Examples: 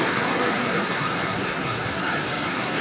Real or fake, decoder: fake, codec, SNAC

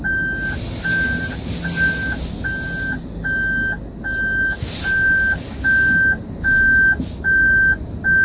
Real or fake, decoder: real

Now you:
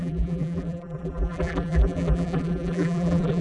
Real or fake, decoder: fake, vocoder, BigVGAN v2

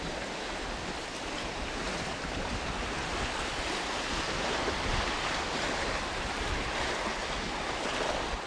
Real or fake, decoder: real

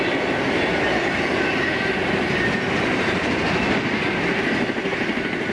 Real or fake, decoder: real